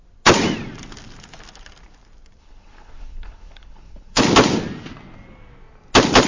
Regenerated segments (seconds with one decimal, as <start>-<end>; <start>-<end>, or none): 2.4-4.2